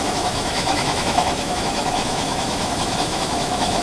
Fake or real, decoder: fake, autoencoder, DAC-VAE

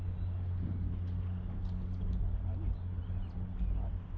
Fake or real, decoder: real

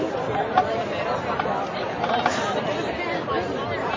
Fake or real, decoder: real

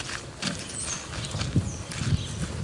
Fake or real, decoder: real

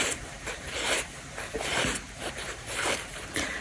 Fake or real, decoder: fake, vocoder, BigVGAN v2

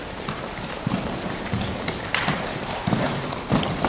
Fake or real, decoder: fake, vocoder, BigVGAN v2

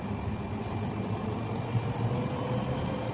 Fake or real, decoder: real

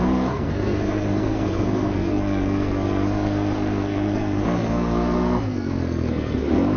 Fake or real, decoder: fake, codec, SNAC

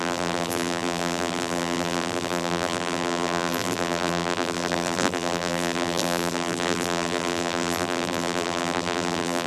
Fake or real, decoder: fake, vocoder, BigVGAN v2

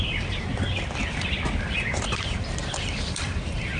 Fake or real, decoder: fake, vocoder, BigVGAN v2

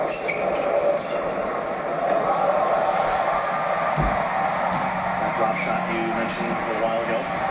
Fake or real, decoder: real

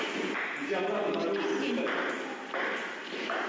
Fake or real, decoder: real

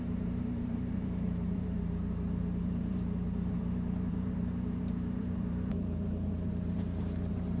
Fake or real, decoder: fake, vocoder, BigVGAN v2